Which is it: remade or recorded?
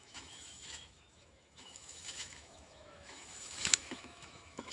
remade